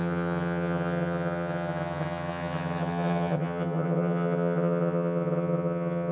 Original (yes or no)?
no